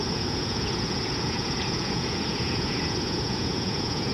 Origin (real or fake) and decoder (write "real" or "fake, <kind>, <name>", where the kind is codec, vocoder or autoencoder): fake, vocoder, Vocos